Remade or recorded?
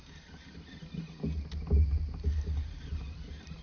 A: recorded